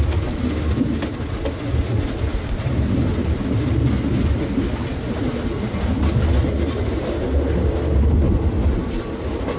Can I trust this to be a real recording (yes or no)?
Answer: yes